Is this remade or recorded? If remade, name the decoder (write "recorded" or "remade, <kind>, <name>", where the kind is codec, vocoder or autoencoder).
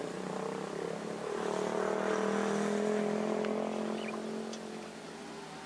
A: recorded